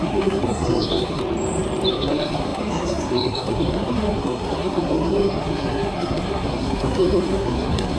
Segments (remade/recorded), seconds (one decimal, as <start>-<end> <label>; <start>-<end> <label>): 0.0-1.2 remade; 1.2-1.9 recorded; 1.9-8.0 remade